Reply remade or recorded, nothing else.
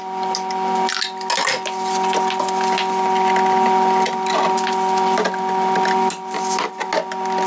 recorded